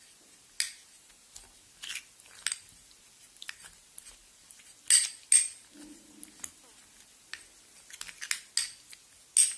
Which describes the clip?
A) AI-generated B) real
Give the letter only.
B